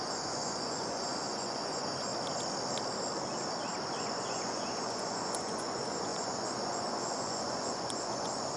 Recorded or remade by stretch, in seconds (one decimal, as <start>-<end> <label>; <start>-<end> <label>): 0.0-2.1 remade; 2.1-4.0 recorded; 4.0-8.6 remade